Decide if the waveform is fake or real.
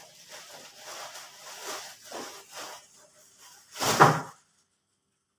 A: real